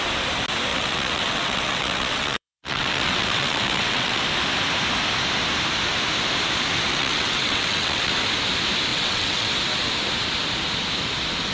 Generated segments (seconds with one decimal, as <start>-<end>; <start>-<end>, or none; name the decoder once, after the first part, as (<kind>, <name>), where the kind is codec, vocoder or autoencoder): 0.7-4.2 (vocoder, WaveNeXt); 6.9-8.1; 8.9-9.5